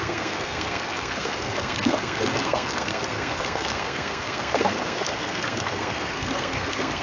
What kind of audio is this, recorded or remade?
remade